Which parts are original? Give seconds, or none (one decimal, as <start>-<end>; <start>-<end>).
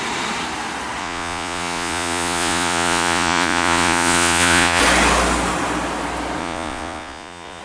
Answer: 0.0-1.0; 4.8-6.4